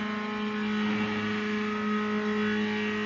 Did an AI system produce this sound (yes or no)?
no